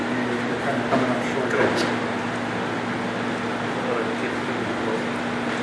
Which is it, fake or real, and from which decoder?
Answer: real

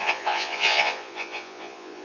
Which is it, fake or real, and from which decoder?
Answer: fake, vocoder, Vocos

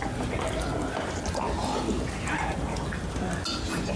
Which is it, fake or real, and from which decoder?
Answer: real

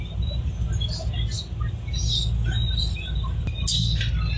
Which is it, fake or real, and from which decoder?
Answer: real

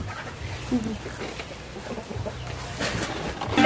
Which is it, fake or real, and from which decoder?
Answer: real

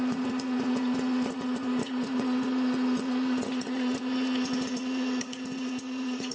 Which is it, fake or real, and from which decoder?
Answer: fake, vocoder, Vocos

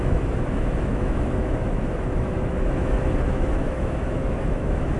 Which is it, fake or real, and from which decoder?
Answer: fake, autoencoder, DAC-VAE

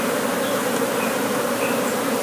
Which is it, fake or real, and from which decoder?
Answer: real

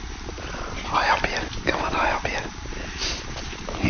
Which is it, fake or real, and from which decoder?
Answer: fake, vocoder, BigVGAN v2